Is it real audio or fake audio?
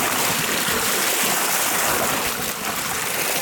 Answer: real